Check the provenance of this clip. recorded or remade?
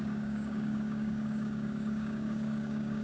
remade